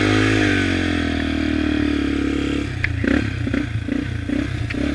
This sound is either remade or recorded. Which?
recorded